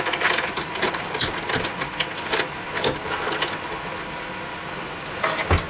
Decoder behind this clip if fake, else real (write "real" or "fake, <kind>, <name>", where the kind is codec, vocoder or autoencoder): real